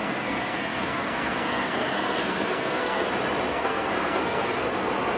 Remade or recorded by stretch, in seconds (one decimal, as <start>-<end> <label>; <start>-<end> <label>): 0.0-3.1 remade; 3.1-3.5 recorded; 3.5-4.6 remade; 4.6-5.2 recorded